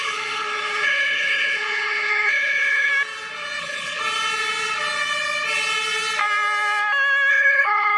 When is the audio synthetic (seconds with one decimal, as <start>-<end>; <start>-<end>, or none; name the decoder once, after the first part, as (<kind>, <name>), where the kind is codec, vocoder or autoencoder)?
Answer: 0.0-2.9 (codec, HILCodec); 3.6-4.0; 7.3-8.0